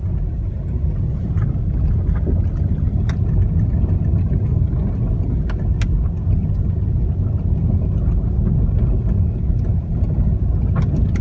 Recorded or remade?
recorded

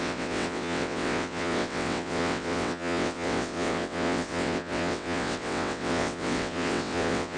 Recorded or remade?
remade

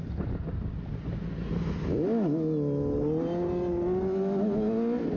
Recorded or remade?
recorded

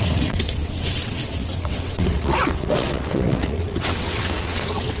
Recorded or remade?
remade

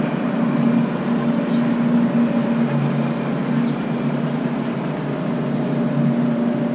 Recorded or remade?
recorded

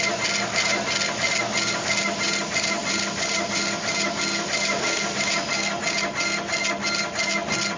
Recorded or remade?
recorded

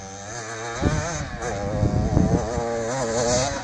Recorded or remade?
recorded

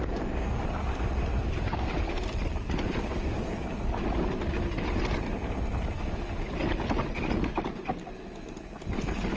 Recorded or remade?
recorded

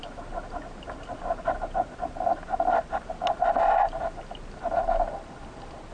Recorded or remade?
recorded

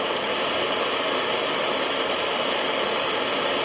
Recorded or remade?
recorded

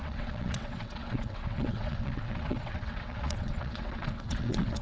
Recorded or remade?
remade